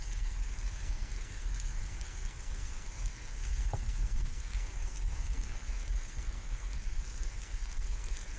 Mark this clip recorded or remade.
remade